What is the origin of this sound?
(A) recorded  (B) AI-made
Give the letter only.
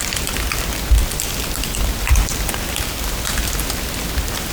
A